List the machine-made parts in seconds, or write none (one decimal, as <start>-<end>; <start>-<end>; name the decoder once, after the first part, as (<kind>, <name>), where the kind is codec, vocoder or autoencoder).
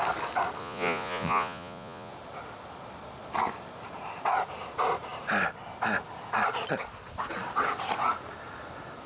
0.6-2.1 (vocoder, Vocos)